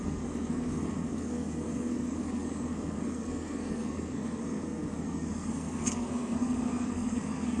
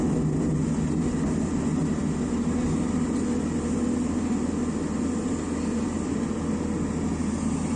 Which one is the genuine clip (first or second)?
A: second